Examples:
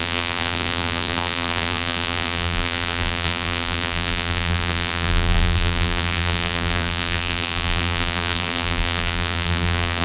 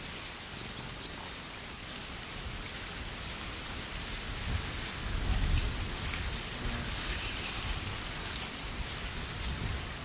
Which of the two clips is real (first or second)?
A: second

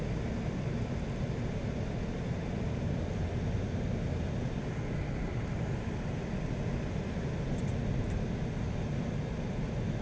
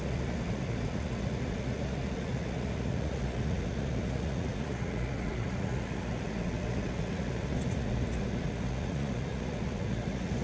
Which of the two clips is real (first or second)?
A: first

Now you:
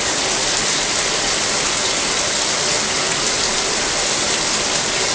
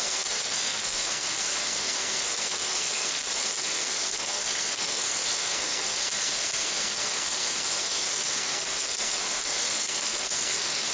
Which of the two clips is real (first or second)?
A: first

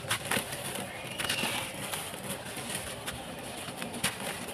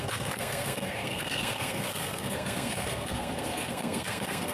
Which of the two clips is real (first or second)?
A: first